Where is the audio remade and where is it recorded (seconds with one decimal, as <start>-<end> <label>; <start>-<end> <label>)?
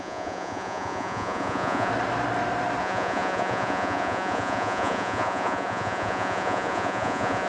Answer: 0.0-1.9 remade; 1.9-2.8 recorded; 2.8-7.5 remade